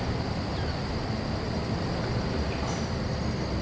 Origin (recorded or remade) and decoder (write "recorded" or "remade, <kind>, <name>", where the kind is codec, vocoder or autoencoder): recorded